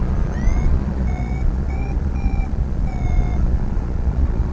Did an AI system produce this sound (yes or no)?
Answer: yes